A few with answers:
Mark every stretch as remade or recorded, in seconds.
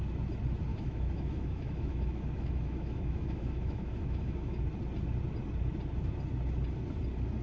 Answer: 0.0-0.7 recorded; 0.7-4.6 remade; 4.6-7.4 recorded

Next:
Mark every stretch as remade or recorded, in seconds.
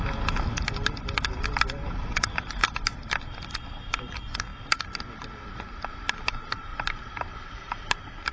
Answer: 0.0-6.7 recorded; 6.7-8.3 remade